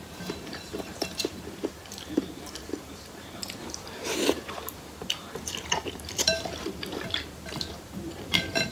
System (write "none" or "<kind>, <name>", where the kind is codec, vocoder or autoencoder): vocoder, BigVGAN v2